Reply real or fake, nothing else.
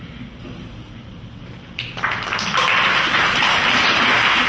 real